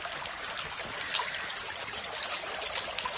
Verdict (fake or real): real